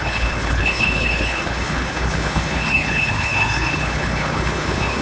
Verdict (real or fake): fake